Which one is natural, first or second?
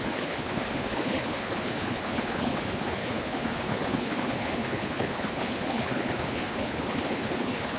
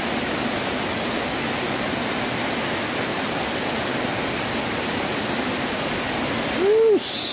second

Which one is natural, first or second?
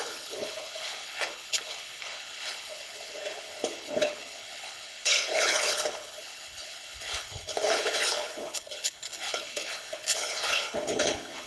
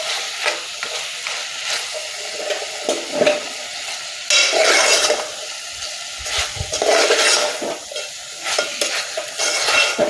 second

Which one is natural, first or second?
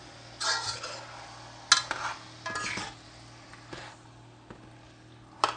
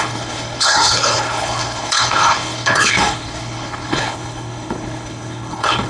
first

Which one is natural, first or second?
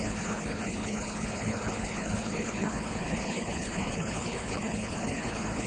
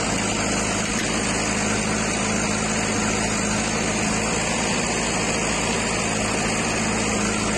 second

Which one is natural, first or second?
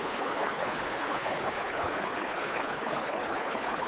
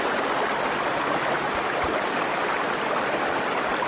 second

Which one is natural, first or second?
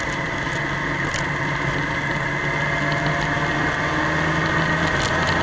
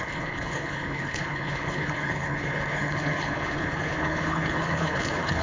first